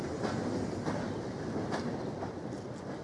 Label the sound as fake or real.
real